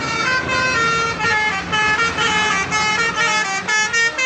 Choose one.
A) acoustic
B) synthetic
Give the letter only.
A